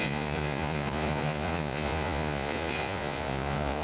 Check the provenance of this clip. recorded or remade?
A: remade